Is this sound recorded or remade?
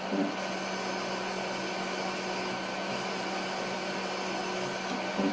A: recorded